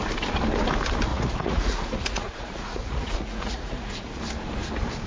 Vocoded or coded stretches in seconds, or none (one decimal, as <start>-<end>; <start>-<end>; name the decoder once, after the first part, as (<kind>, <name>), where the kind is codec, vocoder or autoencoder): 1.1-4.2 (vocoder, Vocos)